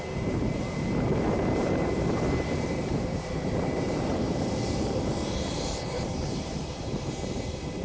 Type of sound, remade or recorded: remade